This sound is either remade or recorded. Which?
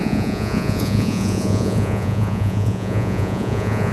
remade